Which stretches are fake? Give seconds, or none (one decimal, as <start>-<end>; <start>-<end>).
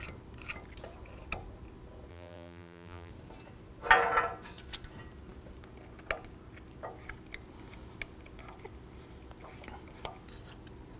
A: 2.1-3.1